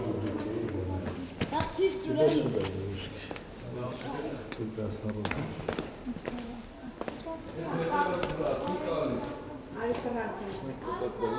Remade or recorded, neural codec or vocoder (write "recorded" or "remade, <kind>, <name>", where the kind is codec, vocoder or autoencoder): recorded